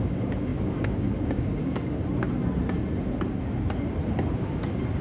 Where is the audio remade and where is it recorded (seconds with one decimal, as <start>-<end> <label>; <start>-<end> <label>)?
0.0-2.0 remade; 2.0-5.0 recorded